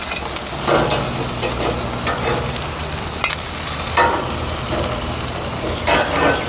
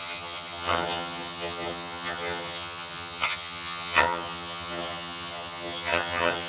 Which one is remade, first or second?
second